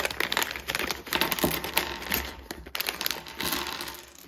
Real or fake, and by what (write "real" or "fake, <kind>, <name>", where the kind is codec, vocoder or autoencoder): real